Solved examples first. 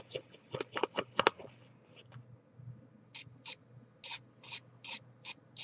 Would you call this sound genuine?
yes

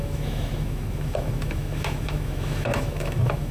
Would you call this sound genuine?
no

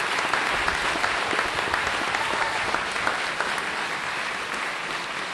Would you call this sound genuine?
yes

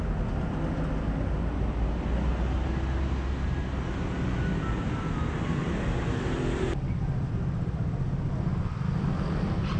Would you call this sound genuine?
yes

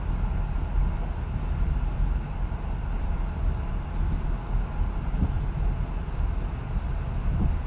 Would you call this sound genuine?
yes